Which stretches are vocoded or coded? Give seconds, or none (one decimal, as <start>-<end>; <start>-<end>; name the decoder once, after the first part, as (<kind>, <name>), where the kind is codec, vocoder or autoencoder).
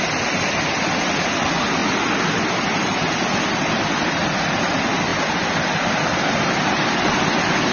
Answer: none